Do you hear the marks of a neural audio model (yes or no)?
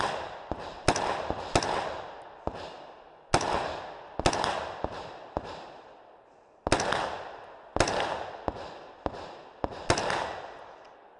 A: no